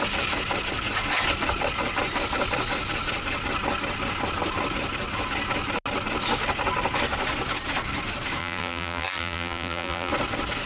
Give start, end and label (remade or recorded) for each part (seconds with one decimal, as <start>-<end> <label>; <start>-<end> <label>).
0.0-8.4 recorded; 8.4-10.1 remade; 10.1-10.7 recorded